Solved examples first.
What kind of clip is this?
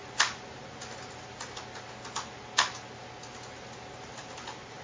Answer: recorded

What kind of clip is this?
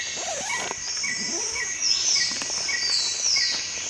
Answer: recorded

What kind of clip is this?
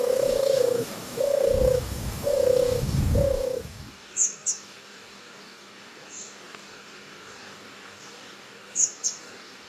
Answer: remade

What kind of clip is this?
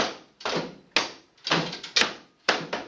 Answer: recorded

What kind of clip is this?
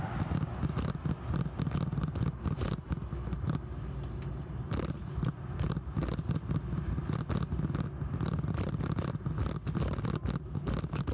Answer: recorded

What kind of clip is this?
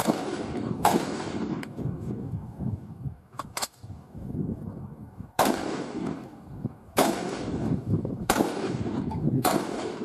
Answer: remade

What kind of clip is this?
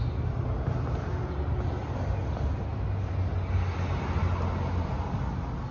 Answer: recorded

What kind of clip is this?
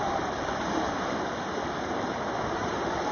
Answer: recorded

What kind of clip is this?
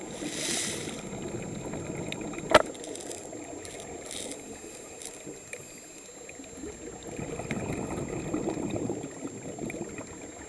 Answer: recorded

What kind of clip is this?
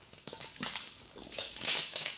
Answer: remade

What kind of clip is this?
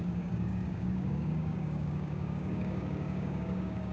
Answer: remade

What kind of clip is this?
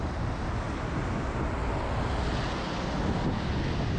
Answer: recorded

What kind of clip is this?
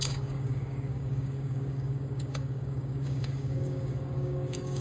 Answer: remade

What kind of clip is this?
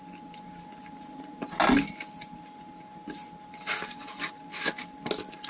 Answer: recorded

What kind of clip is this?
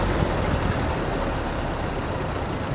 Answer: recorded